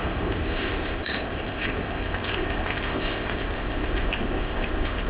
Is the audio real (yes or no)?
no